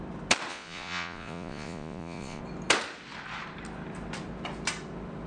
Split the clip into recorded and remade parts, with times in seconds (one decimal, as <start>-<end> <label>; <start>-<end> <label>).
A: 0.0-0.5 recorded; 0.5-2.4 remade; 2.4-5.3 recorded